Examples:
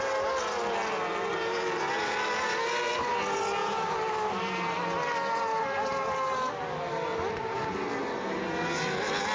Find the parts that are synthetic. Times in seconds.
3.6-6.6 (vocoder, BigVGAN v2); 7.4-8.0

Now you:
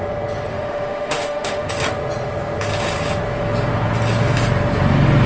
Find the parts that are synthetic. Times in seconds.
0.5-1.7 (autoencoder, DAC-VAE)

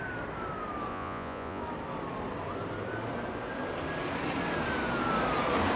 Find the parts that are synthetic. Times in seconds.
0.9-1.6 (vocoder, Vocos)

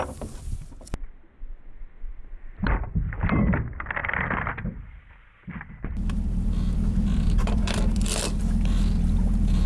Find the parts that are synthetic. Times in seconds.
2.2-3.4 (vocoder, BigVGAN v2); 4.0-8.4